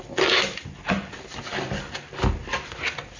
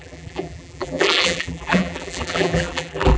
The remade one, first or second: second